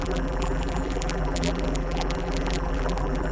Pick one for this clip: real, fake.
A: fake